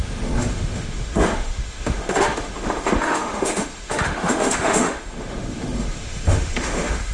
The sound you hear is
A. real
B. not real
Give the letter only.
B